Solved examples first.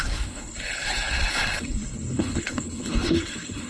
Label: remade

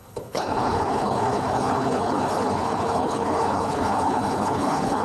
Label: remade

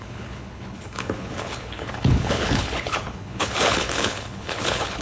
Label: remade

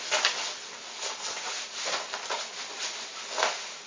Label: recorded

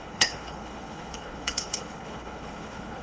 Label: remade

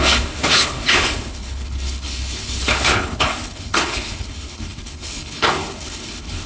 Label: remade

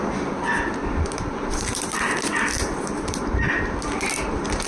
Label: recorded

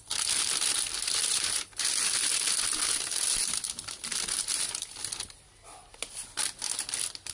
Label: recorded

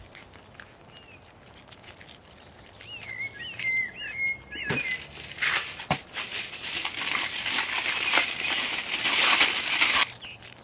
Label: recorded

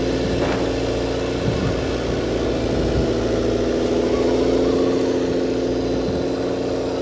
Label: recorded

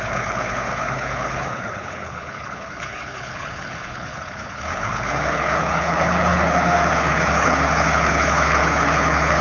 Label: remade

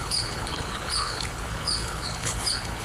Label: remade